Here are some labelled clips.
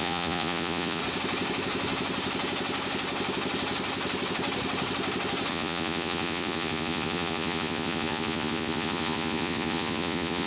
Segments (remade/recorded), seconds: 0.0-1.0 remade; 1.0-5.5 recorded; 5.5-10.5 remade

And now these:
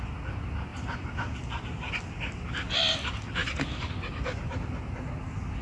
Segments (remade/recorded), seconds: 0.0-5.6 recorded

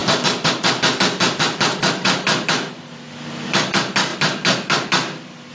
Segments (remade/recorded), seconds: 0.0-5.5 recorded